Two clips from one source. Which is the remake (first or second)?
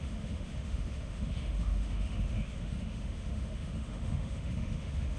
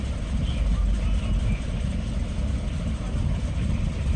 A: first